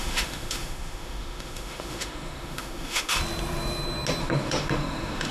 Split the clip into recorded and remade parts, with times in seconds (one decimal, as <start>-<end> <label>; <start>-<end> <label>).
0.0-3.2 remade; 3.2-4.2 recorded; 4.2-5.3 remade